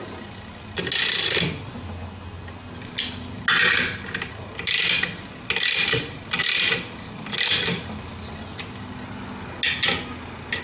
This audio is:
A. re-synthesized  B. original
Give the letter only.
B